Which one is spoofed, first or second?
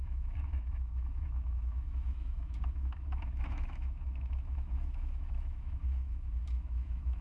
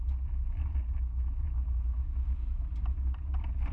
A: first